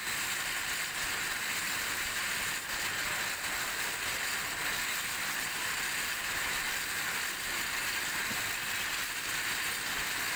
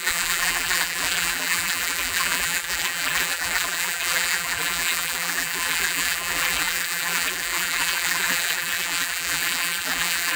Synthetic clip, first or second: second